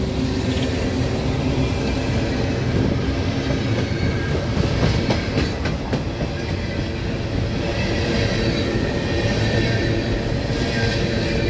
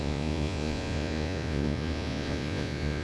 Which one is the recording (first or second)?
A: first